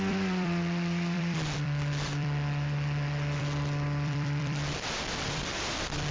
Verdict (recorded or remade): remade